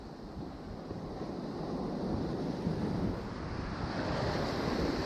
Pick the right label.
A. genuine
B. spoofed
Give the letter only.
A